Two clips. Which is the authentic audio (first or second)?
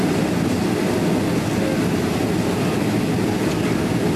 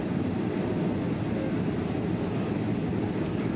first